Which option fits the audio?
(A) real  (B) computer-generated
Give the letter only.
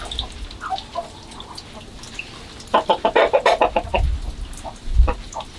A